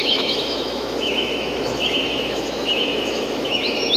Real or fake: fake